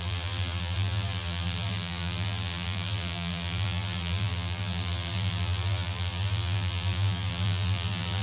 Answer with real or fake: fake